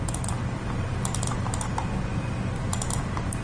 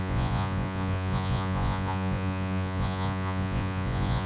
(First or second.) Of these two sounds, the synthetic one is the second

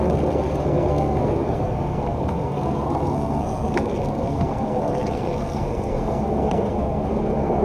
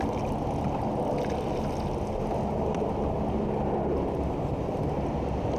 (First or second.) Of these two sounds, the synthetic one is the first